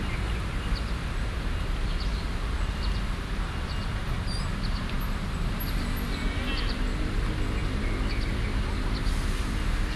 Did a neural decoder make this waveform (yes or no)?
no